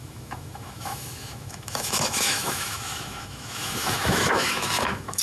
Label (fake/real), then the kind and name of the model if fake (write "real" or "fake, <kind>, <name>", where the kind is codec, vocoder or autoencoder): fake, autoencoder, DAC-VAE